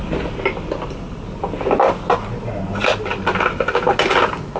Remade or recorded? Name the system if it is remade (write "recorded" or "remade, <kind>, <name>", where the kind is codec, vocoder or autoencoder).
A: recorded